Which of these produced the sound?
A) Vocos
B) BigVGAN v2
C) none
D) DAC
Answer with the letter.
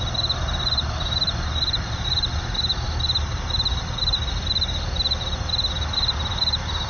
C